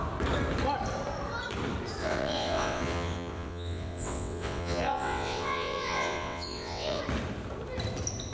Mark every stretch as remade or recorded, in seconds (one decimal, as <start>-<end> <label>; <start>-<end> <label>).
0.0-2.0 recorded; 2.0-7.0 remade; 7.0-8.3 recorded